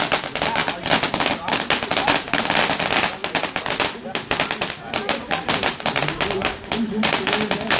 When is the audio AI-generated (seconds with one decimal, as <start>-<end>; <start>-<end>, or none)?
0.6-1.4; 1.9-2.6; 3.2-7.0